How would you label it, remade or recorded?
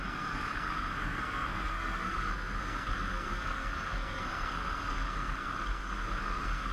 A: remade